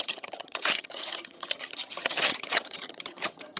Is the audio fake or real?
fake